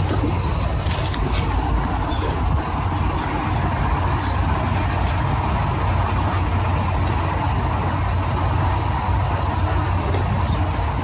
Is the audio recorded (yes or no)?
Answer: yes